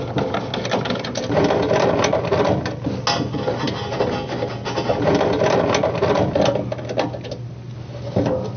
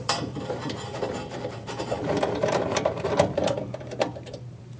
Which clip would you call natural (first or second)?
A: first